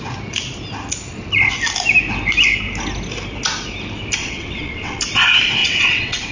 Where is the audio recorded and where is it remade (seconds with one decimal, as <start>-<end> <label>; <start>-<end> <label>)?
0.0-4.2 recorded; 4.2-5.0 remade; 5.0-5.6 recorded; 5.6-6.3 remade